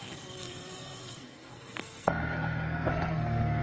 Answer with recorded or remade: remade